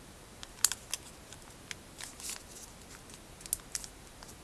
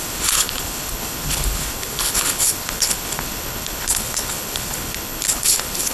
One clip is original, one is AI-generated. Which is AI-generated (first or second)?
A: second